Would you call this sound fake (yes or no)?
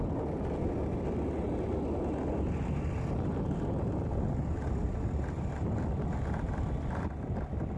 no